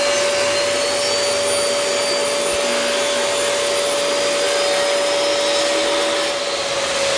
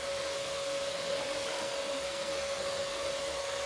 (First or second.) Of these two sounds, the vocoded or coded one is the second